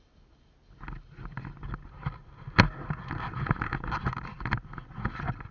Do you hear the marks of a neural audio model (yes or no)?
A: no